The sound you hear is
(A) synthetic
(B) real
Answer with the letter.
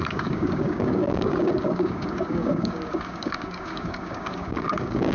A